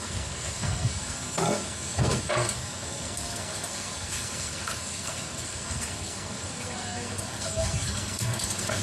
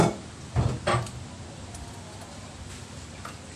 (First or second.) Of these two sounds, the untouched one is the second